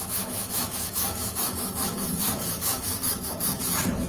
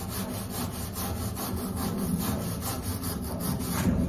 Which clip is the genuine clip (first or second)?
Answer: second